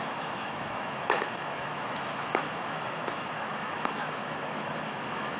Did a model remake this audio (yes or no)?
yes